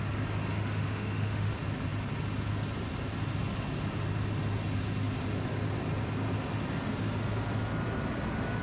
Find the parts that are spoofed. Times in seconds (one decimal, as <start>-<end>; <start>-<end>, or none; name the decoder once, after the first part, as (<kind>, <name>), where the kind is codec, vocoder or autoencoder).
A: 0.5-1.5 (autoencoder, DAC-VAE)